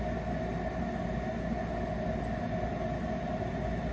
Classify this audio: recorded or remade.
recorded